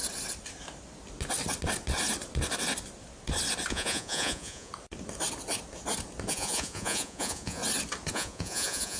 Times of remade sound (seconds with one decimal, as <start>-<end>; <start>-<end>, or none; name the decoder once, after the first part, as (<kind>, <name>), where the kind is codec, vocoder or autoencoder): 3.7-4.7 (vocoder, Vocos); 6.3-7.6; 8.1-9.0